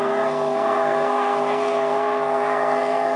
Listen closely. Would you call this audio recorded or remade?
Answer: remade